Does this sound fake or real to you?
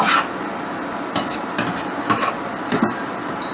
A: real